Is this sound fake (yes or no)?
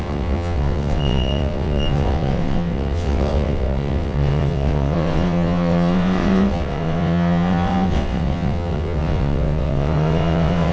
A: yes